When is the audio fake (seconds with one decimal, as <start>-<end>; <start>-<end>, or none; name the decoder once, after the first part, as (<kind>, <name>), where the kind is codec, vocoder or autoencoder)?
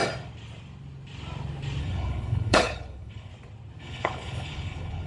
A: 1.8-3.3 (codec, HILCodec); 3.8-5.1